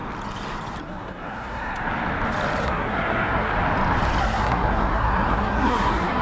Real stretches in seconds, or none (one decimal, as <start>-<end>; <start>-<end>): 0.0-0.8; 1.8-2.6; 3.5-4.2

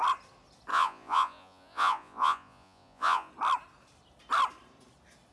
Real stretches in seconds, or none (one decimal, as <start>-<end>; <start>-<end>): 0.0-0.7; 3.3-5.3

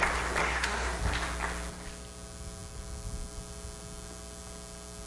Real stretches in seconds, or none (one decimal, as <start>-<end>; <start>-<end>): 0.0-0.4; 1.0-5.1

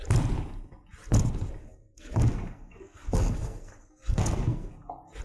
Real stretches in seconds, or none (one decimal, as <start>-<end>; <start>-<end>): 0.0-1.6; 4.7-5.2

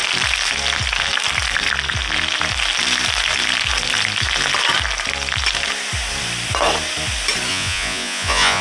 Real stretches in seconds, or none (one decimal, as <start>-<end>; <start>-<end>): 0.0-7.5

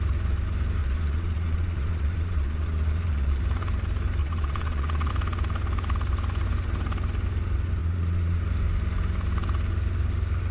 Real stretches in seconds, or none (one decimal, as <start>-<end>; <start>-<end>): 0.0-0.8; 3.4-4.2; 5.1-7.8; 8.4-10.5

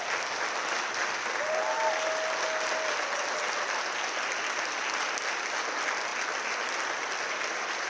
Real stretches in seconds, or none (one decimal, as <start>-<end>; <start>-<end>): 0.0-7.9